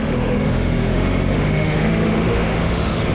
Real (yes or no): no